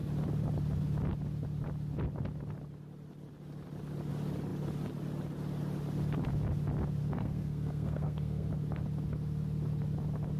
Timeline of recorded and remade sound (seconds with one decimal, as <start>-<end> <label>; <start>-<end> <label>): 0.0-7.0 recorded; 7.0-8.5 remade; 8.5-10.4 recorded